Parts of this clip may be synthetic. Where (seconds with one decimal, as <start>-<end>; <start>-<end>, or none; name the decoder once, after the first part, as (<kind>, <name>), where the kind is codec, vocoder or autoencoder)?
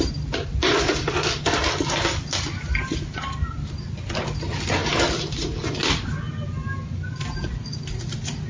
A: none